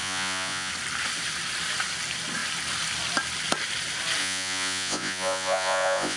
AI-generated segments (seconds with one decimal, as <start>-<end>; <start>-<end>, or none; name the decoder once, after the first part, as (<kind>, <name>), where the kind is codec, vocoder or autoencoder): 0.0-0.7 (vocoder, Vocos); 4.2-6.2